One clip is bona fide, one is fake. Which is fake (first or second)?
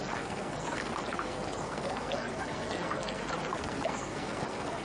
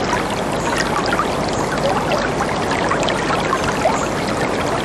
first